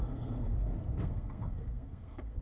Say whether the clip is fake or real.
fake